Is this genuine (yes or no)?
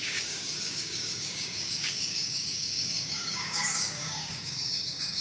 no